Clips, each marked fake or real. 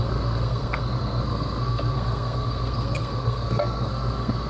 fake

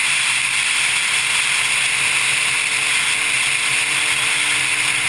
real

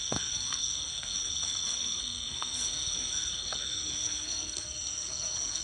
fake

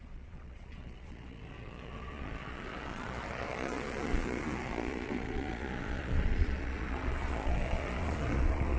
fake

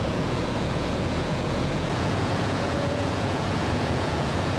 fake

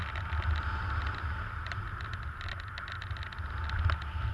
real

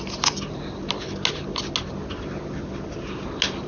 real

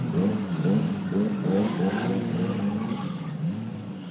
fake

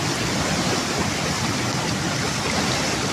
real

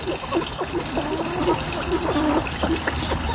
real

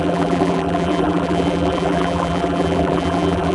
fake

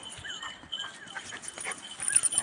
real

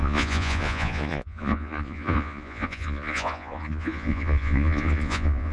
fake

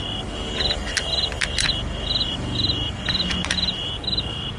real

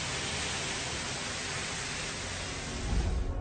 real